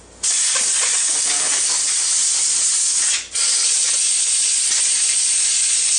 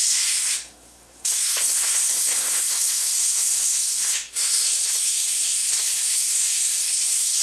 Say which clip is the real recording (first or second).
first